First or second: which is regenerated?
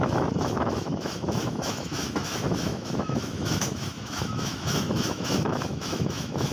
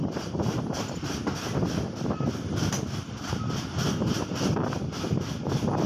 first